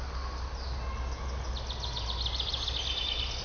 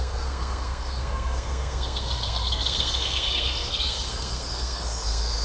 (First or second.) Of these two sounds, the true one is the first